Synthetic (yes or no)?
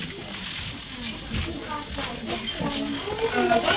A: no